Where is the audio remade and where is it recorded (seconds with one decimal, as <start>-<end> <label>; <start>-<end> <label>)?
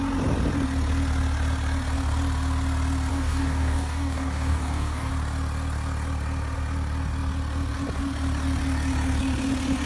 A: 0.0-3.1 recorded; 3.1-5.1 remade; 5.1-9.9 recorded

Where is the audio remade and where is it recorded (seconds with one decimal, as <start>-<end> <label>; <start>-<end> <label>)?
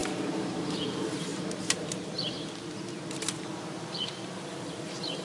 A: 0.0-1.3 remade; 1.3-4.4 recorded; 4.4-5.2 remade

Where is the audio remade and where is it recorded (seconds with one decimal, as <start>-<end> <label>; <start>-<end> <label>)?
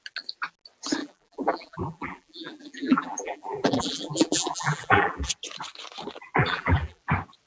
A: 0.0-1.0 recorded; 1.0-5.3 remade; 5.3-6.4 recorded; 6.4-7.0 remade; 7.0-7.5 recorded